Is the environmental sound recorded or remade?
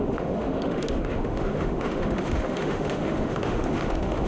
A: remade